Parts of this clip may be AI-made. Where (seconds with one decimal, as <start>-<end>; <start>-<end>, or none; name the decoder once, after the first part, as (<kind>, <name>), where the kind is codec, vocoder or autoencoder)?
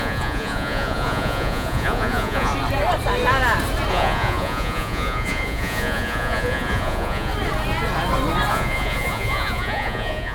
0.0-2.5 (vocoder, Vocos); 3.9-7.3; 8.5-10.3